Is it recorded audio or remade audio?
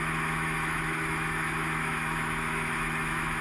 remade